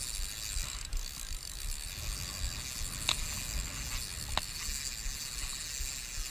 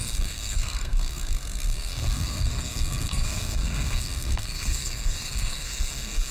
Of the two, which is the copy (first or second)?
second